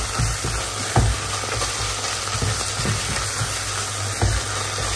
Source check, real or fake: real